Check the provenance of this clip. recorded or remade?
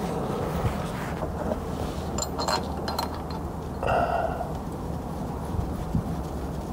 recorded